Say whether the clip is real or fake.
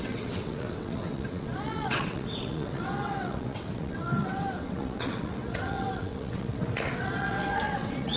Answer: fake